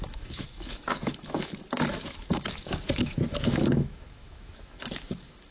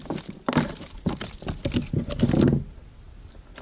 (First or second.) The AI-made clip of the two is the first